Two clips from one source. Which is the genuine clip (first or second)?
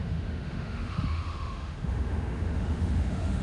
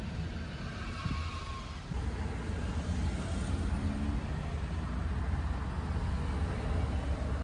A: second